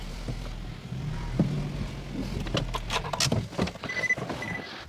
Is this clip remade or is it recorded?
recorded